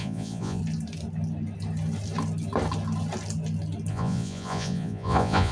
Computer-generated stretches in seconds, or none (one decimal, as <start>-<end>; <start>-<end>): 0.0-0.6; 3.9-5.5